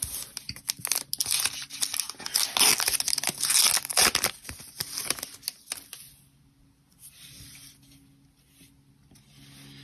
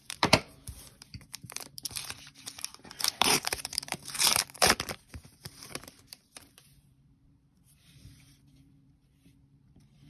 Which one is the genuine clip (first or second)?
first